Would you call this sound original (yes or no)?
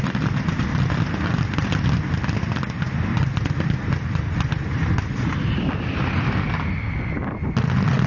yes